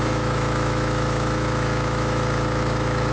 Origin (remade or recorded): remade